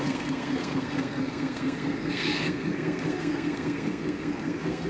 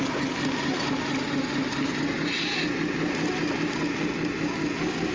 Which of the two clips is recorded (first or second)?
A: second